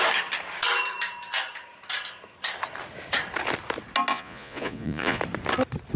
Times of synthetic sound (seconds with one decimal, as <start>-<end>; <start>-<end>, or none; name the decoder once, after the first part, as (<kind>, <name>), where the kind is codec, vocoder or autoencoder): 4.1-5.2 (vocoder, Vocos)